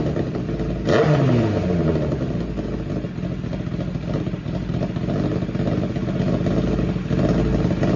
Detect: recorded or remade recorded